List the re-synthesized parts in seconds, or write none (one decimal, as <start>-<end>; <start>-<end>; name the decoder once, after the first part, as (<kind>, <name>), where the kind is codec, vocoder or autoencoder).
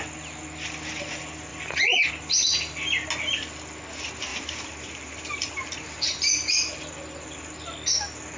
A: 1.5-2.1 (vocoder, BigVGAN v2); 4.3-6.7